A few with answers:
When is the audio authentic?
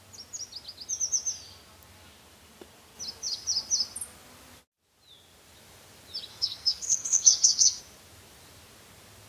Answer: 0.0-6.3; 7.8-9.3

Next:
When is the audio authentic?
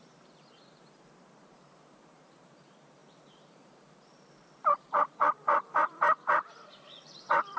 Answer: none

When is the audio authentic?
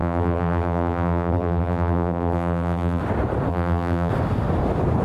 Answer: 3.0-3.5; 4.1-5.0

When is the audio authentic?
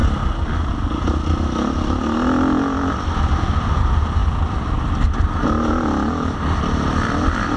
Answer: 0.0-7.6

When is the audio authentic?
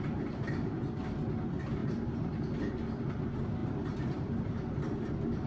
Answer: 0.0-1.8; 2.7-3.6; 4.4-5.5